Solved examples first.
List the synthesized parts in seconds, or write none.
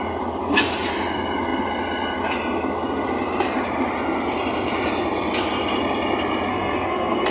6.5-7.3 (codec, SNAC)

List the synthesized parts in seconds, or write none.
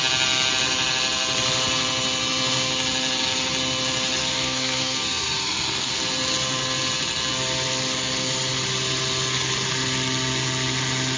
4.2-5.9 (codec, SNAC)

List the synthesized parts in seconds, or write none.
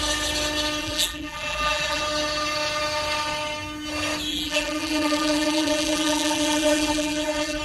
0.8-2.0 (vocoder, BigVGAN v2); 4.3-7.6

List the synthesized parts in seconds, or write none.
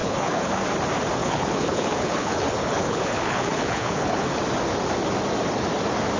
0.0-0.6 (codec, HILCodec); 1.2-4.4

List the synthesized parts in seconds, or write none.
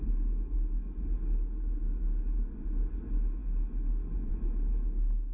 none